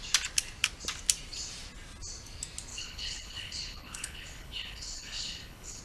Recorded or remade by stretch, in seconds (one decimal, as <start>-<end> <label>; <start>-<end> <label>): 0.0-2.7 recorded; 2.7-5.8 remade